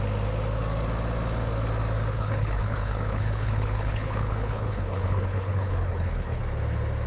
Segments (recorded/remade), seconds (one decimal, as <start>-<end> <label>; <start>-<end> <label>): 0.0-2.1 recorded; 2.1-6.4 remade; 6.4-7.1 recorded